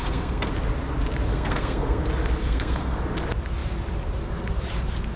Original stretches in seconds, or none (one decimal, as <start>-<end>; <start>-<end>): 0.5-1.3; 2.0-2.4; 3.0-5.2